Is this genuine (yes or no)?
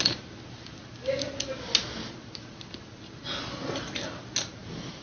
yes